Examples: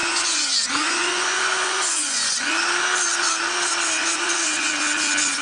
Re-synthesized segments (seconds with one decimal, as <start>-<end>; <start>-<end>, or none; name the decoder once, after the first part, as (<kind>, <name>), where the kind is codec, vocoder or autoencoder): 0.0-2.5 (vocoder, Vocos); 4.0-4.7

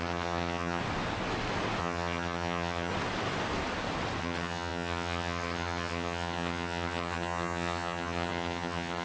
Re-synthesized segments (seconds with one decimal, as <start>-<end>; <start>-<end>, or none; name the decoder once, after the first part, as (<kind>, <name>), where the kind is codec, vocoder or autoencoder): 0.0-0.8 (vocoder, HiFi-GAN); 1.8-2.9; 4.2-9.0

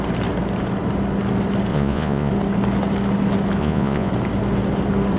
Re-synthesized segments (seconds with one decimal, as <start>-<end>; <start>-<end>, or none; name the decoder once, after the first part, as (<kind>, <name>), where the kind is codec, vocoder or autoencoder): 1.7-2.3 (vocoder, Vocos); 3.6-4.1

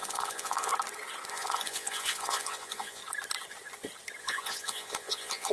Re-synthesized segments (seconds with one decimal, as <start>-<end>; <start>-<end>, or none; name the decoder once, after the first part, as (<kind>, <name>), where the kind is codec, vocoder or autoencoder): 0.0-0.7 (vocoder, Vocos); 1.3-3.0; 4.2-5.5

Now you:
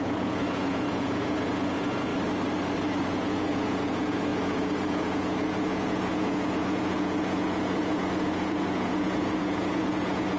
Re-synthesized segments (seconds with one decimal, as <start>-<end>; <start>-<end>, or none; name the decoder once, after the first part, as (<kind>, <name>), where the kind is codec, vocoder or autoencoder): 0.0-2.1 (vocoder, Vocos); 3.1-10.4